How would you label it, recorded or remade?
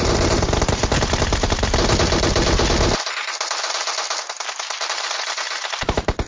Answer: recorded